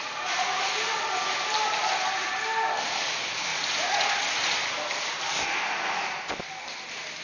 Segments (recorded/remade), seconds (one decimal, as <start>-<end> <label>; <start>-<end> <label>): 0.0-0.7 remade; 0.7-3.5 recorded; 3.5-4.1 remade; 4.1-7.2 recorded